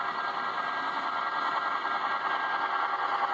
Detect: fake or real real